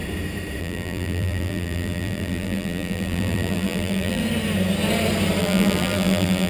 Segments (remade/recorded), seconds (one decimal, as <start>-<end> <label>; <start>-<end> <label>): 0.0-0.6 recorded; 0.6-4.2 remade; 4.2-5.4 recorded; 5.4-6.5 remade